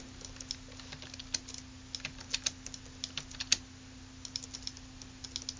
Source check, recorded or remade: recorded